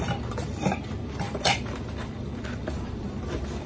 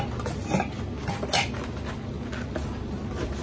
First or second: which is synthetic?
first